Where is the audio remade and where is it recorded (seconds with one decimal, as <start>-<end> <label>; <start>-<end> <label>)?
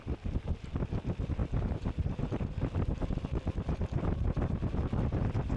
0.0-5.6 recorded